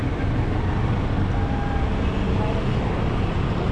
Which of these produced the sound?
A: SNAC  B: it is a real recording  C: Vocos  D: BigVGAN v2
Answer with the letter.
B